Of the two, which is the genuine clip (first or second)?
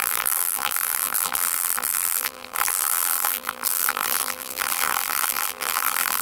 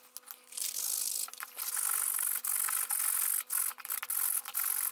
second